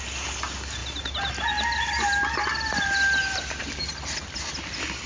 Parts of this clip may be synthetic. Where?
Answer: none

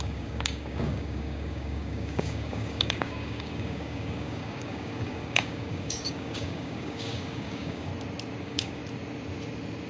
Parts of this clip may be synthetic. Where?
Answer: 0.0-7.9 (codec, DAC); 8.4-8.8

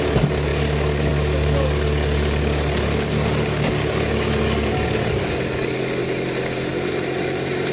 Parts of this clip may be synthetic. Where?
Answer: 0.0-6.0 (codec, DAC)

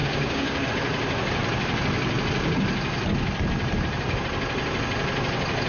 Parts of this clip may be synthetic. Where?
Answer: 0.0-0.7 (codec, DAC)

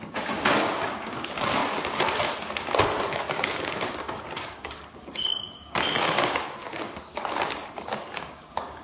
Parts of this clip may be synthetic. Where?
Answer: 0.0-1.6 (codec, DAC); 3.0-8.8